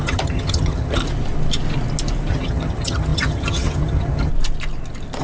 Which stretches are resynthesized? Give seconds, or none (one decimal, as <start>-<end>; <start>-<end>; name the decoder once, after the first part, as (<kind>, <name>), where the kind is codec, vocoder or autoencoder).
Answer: 0.0-1.0 (vocoder, HiFi-GAN); 2.3-4.3